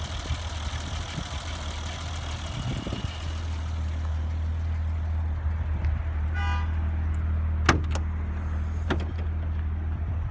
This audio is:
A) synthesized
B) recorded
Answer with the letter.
B